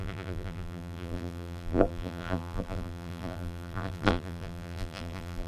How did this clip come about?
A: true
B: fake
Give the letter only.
B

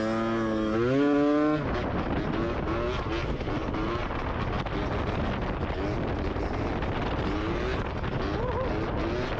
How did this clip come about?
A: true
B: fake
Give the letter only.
A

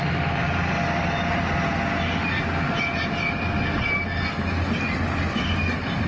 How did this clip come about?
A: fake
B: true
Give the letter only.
B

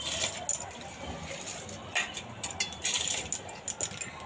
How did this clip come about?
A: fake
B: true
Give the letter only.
B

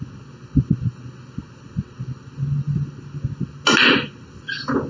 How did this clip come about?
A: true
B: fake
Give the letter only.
A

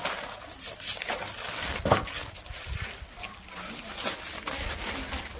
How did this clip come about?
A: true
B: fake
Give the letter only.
A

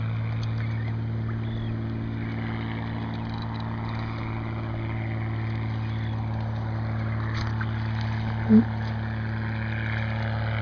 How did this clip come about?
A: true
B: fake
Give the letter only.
A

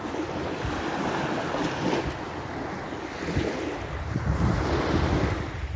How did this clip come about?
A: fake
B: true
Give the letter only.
B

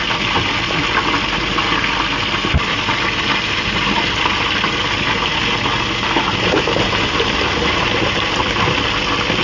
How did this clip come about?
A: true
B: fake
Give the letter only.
A